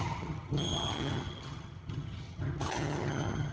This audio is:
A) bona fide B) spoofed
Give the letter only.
B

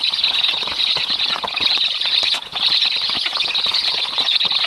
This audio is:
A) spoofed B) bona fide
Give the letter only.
A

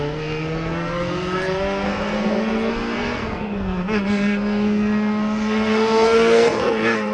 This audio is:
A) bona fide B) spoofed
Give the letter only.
B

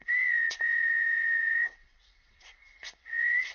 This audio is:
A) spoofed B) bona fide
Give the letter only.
A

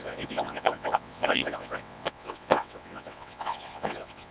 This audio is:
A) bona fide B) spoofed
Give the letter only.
B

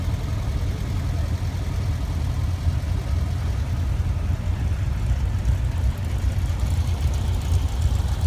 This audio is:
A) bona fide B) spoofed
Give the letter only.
A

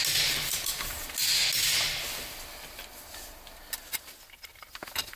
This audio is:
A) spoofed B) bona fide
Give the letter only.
B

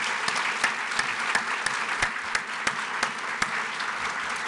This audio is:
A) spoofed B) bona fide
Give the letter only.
B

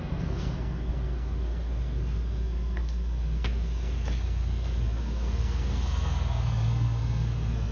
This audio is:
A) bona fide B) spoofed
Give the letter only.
B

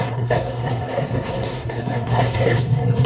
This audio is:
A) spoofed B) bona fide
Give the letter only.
A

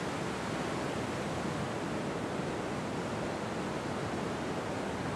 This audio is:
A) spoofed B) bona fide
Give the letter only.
B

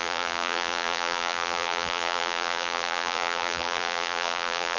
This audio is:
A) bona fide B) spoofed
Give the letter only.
B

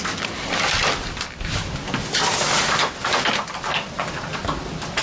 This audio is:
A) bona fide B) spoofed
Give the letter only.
A